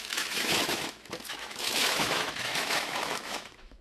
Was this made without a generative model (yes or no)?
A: no